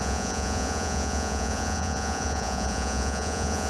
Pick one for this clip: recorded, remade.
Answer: remade